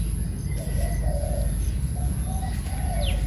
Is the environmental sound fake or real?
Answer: real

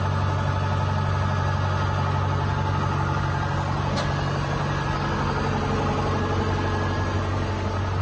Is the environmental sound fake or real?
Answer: real